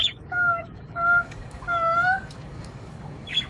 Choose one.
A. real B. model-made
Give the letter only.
B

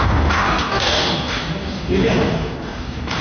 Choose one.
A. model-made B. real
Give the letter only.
A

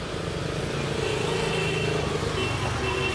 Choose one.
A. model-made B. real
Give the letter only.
B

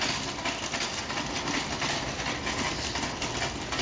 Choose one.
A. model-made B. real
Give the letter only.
B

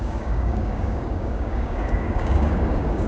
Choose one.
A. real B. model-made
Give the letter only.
B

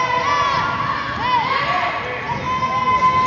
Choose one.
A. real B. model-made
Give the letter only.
A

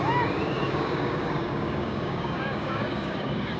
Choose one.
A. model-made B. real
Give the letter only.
A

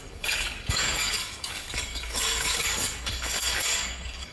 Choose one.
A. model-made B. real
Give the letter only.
A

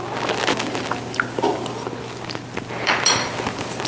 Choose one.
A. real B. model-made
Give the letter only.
A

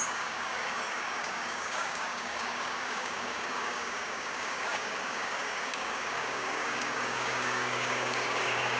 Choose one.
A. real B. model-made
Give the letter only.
B